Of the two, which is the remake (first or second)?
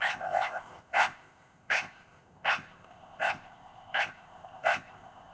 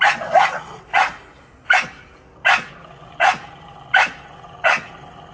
first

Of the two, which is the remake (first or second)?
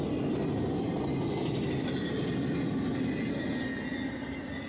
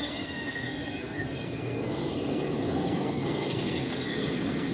second